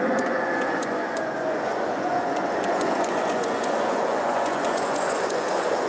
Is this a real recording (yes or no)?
no